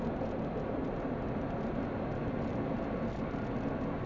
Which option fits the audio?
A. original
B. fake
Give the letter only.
A